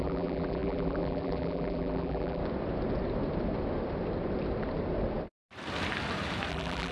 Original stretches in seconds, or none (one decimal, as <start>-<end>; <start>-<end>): 2.4-6.5